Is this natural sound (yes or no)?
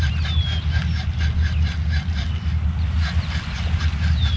yes